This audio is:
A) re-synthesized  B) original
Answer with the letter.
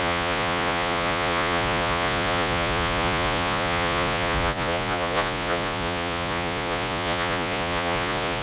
A